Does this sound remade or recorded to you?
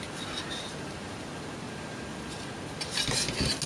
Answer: recorded